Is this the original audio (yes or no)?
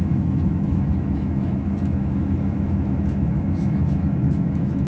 no